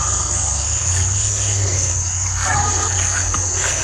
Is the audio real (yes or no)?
no